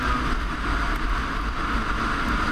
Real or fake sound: fake